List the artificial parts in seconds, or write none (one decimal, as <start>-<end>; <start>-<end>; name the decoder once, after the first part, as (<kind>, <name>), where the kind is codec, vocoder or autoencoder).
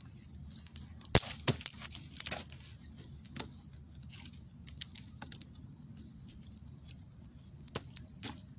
0.0-0.4 (vocoder, BigVGAN v2); 5.6-8.6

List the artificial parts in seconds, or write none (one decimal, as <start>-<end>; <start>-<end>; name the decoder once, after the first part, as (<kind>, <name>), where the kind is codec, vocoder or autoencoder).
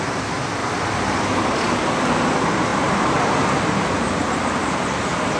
2.7-5.4 (vocoder, BigVGAN v2)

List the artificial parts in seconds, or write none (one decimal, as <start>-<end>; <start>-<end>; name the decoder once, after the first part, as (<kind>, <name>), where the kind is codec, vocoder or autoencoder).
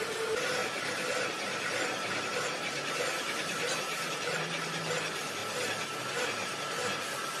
0.0-0.6 (vocoder, BigVGAN v2); 2.2-5.4; 6.0-7.4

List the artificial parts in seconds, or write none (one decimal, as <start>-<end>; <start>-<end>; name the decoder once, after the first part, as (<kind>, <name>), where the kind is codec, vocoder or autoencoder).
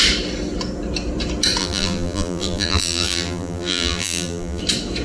1.6-4.6 (vocoder, BigVGAN v2)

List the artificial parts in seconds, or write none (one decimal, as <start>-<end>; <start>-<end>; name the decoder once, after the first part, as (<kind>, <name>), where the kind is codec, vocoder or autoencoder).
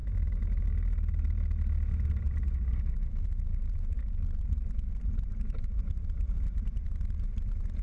0.0-7.8 (vocoder, BigVGAN v2)